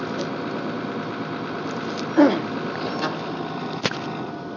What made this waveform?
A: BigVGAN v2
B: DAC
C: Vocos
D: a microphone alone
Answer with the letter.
D